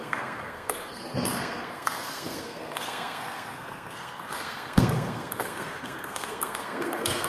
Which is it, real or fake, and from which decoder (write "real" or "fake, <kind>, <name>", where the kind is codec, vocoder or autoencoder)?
fake, codec, SNAC